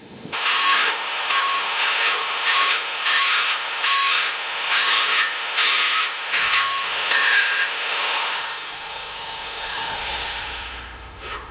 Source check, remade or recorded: remade